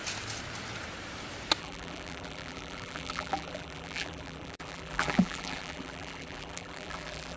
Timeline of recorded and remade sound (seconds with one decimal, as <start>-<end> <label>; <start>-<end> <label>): 0.0-1.6 recorded; 1.6-7.4 remade